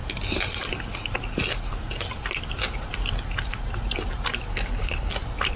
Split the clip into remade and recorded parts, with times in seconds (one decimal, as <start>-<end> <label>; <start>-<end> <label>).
0.0-4.5 recorded; 4.5-5.1 remade; 5.1-5.6 recorded